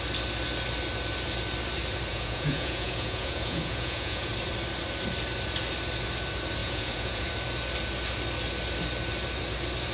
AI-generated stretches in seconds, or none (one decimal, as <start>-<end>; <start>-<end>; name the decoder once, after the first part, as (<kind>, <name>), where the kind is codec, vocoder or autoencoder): 2.1-4.3 (vocoder, Vocos); 6.6-7.3